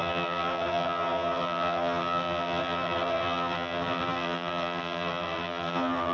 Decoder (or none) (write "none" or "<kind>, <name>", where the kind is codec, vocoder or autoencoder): vocoder, BigVGAN v2